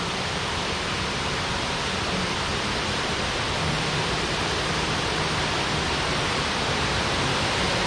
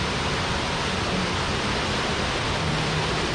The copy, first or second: first